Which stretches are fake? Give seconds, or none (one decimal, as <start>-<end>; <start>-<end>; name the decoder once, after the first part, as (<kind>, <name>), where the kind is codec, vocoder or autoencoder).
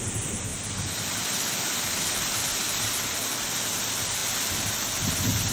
none